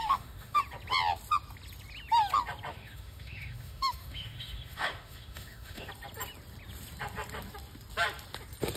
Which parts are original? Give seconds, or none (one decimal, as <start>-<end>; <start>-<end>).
0.6-2.7; 5.9-8.8